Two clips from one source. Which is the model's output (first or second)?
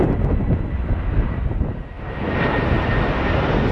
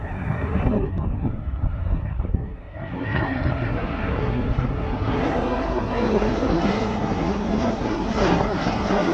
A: second